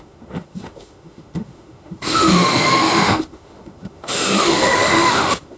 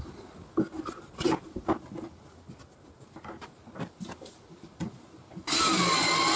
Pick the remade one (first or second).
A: first